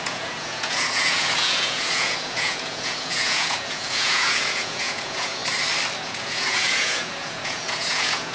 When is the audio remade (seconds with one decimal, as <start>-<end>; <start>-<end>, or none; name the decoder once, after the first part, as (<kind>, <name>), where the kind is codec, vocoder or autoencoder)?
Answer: 0.0-5.4 (vocoder, Vocos); 6.0-8.3